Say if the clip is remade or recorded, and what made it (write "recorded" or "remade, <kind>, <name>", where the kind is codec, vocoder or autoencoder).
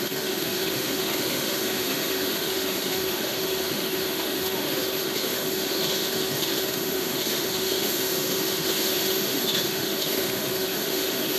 remade, autoencoder, DAC-VAE